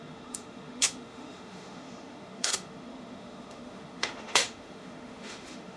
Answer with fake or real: fake